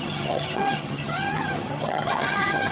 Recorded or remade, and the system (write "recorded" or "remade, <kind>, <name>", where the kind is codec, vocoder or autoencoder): remade, vocoder, HiFi-GAN